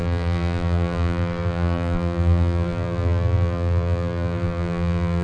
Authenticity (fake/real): fake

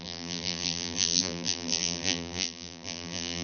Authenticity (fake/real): fake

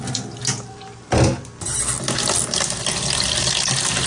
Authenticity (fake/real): real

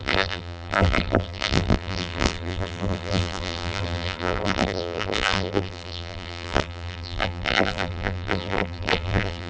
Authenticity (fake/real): fake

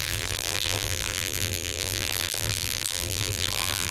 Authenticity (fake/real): fake